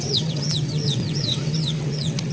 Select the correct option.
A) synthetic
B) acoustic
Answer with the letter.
A